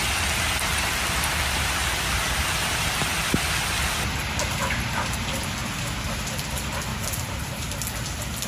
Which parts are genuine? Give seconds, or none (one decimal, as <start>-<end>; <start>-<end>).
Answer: 0.0-6.9; 7.5-8.5